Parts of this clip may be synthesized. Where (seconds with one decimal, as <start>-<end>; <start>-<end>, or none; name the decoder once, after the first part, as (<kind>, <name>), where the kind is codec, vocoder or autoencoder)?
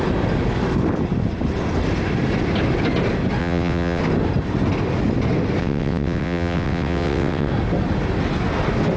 3.4-4.0 (vocoder, WaveNeXt); 5.6-7.5